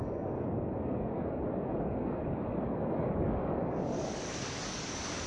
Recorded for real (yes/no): no